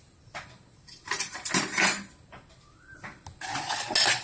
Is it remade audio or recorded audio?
recorded